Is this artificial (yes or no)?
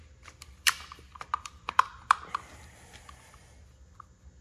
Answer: yes